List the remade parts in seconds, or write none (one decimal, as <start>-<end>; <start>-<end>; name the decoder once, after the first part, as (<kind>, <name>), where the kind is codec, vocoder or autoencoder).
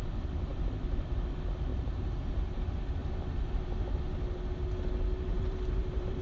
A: 1.7-2.6 (vocoder, BigVGAN v2); 3.0-4.0; 5.3-6.2